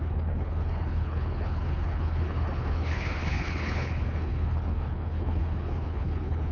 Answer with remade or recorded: remade